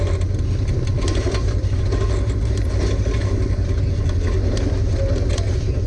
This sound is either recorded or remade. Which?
recorded